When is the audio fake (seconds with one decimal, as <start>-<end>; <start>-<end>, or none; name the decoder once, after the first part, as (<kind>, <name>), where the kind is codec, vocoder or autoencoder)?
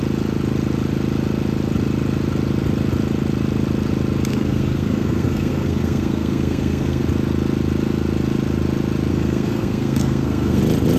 4.3-7.0 (codec, SNAC); 9.1-10.6